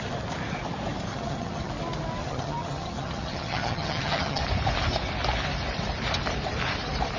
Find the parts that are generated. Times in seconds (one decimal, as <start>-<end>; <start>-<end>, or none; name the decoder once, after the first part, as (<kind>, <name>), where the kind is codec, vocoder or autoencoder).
1.1-1.7 (vocoder, HiFi-GAN); 2.2-4.4